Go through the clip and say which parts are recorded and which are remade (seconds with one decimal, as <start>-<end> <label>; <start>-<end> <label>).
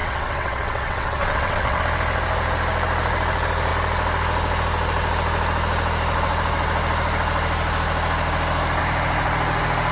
0.0-1.8 remade; 1.8-9.9 recorded